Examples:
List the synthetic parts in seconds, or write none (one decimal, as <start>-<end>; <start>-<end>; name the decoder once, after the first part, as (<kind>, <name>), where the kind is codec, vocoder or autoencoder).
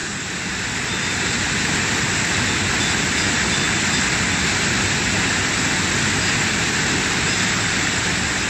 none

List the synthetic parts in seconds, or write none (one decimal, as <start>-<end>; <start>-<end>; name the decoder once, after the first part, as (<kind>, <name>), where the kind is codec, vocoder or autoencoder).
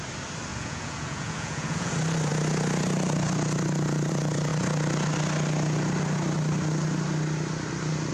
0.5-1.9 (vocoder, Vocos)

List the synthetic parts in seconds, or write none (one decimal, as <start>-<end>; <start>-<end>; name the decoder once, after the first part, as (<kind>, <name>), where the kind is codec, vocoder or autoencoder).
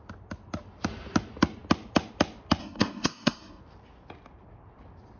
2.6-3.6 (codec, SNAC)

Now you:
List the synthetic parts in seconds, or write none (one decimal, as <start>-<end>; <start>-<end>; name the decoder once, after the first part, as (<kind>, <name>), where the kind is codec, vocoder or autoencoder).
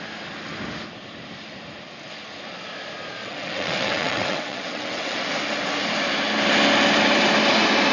3.2-5.2 (vocoder, WaveNeXt)